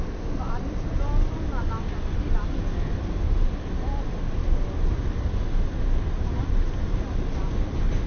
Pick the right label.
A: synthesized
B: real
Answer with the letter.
B